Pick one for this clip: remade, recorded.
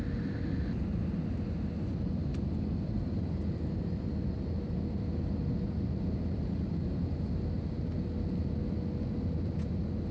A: recorded